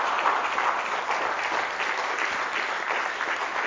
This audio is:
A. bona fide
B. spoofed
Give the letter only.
A